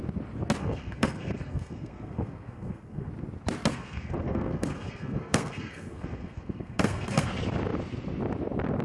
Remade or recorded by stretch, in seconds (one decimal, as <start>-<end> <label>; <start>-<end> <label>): 0.0-0.6 recorded; 0.6-3.1 remade; 3.1-3.7 recorded; 3.7-7.3 remade; 7.3-8.8 recorded